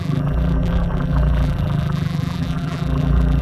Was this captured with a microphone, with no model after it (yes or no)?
no